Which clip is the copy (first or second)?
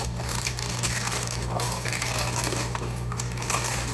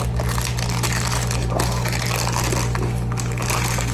first